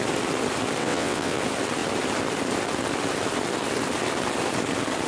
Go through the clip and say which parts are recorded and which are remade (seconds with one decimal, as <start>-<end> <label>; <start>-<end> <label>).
0.0-0.8 recorded; 0.8-1.4 remade; 1.4-5.1 recorded